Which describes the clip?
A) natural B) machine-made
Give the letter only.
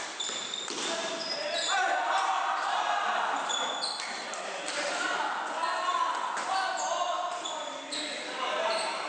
B